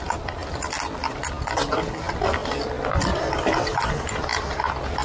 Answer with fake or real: real